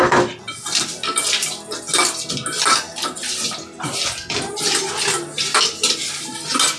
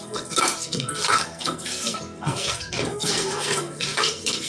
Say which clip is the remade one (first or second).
second